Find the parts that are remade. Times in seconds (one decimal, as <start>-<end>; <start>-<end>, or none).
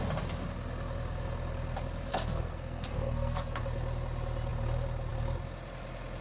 2.1-3.6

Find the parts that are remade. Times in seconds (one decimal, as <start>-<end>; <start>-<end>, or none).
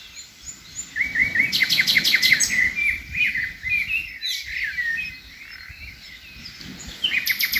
none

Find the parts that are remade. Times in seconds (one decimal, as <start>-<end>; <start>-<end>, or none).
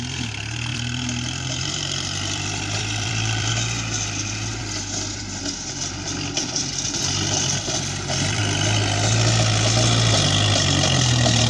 0.7-3.5; 4.6-8.4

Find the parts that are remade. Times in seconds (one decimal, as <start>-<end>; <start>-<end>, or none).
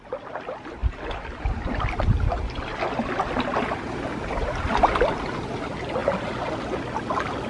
none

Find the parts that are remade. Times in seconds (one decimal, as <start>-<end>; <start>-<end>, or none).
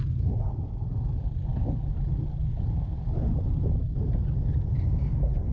none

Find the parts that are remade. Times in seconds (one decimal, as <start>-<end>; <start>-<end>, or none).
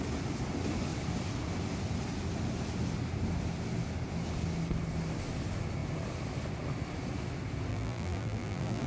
7.7-8.9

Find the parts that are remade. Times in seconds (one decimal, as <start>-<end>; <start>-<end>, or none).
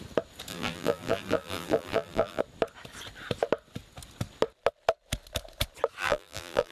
0.5-2.4; 6.0-6.7